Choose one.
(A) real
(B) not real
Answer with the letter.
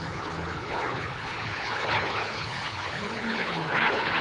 B